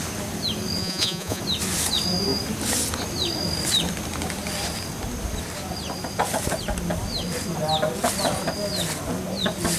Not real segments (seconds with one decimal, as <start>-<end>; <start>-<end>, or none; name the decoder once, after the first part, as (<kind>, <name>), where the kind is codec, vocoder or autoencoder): 0.8-1.4 (vocoder, Vocos)